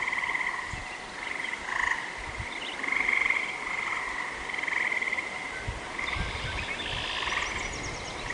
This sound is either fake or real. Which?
real